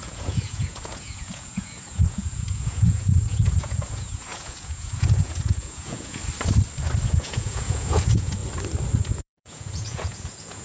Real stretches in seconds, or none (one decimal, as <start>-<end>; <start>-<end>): 6.2-7.1; 8.4-9.0